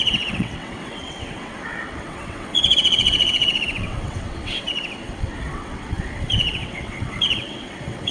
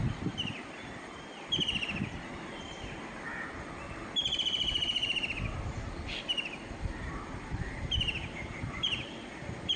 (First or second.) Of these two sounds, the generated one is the first